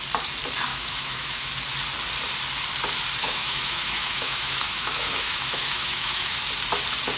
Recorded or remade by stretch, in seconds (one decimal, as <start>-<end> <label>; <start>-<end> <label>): 0.0-0.7 recorded; 0.7-1.5 remade; 1.5-3.2 recorded; 3.2-6.4 remade; 6.4-7.2 recorded

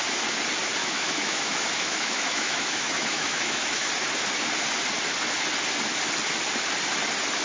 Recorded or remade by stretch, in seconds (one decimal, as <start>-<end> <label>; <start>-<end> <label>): 0.0-0.8 recorded; 0.8-3.9 remade; 3.9-7.4 recorded

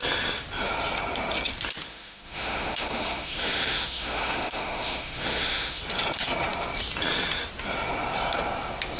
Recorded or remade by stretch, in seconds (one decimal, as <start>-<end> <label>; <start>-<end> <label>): 0.0-1.9 recorded; 1.9-5.8 remade; 5.8-9.0 recorded

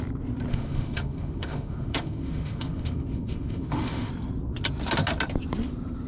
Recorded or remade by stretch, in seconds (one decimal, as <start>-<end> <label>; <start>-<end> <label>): 0.0-0.5 recorded; 0.5-4.1 remade; 4.1-6.1 recorded

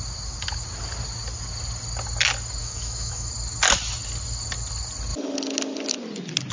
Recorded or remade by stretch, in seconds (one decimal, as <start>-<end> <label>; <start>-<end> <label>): 0.0-2.6 recorded; 2.6-3.3 remade; 3.3-6.5 recorded

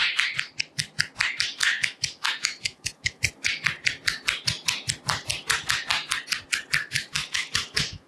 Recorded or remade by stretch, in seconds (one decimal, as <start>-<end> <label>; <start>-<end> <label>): 0.0-1.6 recorded; 1.6-3.2 remade; 3.2-6.9 recorded; 6.9-8.1 remade